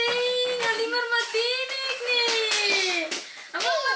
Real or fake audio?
real